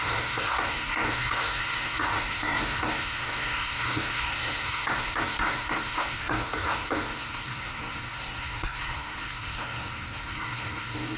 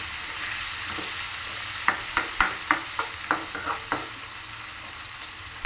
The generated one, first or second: first